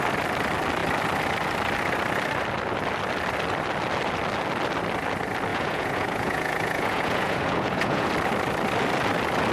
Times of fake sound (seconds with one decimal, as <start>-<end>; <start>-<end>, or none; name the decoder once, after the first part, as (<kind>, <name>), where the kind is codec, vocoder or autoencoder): 5.5-8.1 (vocoder, Vocos)